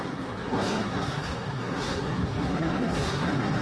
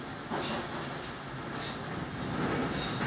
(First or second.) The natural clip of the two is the second